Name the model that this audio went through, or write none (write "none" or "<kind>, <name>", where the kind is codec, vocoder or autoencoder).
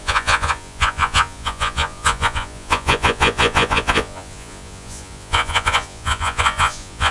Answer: vocoder, Vocos